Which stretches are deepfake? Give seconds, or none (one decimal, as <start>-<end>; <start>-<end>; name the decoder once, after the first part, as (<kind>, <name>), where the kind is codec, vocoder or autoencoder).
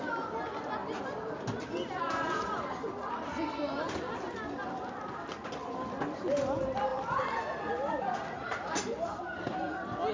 6.9-7.9 (vocoder, BigVGAN v2)